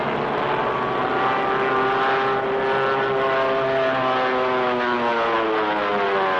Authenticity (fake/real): real